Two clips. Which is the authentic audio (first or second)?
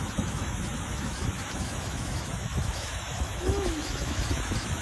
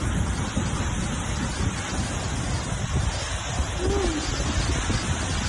second